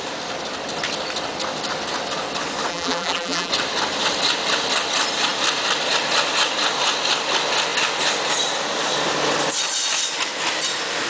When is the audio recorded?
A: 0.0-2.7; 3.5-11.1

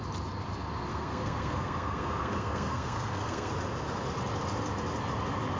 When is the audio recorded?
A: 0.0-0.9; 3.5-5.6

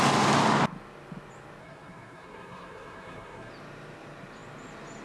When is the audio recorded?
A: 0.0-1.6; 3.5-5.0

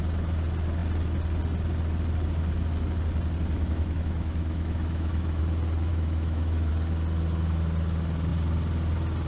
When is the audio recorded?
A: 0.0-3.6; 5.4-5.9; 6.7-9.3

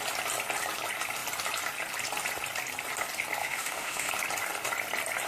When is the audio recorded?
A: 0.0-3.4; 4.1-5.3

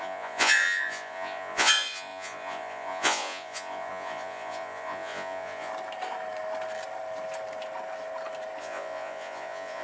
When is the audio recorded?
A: 5.7-8.6

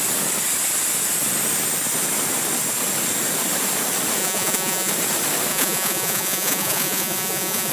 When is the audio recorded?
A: 0.0-4.2; 4.9-5.5